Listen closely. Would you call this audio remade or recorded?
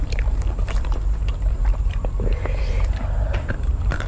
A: remade